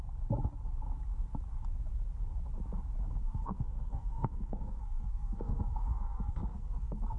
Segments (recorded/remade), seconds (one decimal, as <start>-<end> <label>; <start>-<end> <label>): 0.0-3.2 recorded; 3.2-7.2 remade